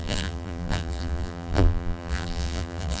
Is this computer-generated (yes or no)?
yes